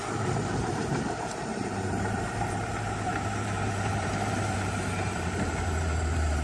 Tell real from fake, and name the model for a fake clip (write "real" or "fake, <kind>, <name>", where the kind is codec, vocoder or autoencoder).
fake, vocoder, BigVGAN v2